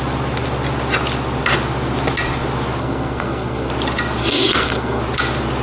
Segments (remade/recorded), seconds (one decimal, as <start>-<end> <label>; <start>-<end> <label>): 0.0-2.8 recorded; 2.8-3.7 remade; 3.7-4.2 recorded; 4.2-5.0 remade; 5.0-5.6 recorded